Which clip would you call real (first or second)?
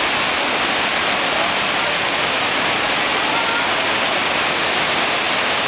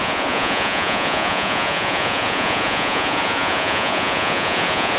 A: first